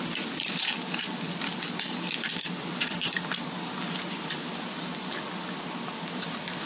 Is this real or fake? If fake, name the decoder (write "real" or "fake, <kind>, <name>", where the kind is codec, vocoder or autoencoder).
real